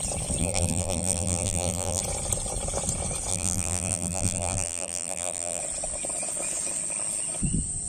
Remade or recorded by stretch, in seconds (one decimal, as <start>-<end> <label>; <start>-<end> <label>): 0.0-0.4 recorded; 0.4-2.0 remade; 2.0-3.3 recorded; 3.3-5.6 remade; 5.6-7.9 recorded